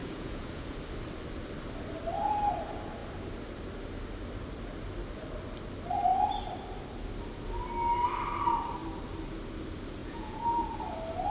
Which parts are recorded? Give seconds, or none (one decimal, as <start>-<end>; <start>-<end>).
0.8-10.0; 10.8-11.3